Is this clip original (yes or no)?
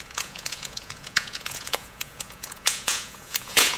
no